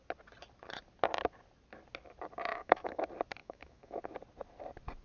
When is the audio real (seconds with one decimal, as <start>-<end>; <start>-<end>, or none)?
0.0-2.5; 3.0-3.4; 4.0-5.0